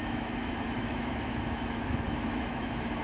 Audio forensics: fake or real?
fake